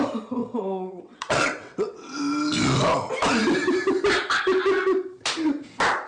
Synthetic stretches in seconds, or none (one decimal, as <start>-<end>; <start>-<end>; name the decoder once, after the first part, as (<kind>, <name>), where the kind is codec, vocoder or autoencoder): 0.4-2.2 (vocoder, WaveNeXt)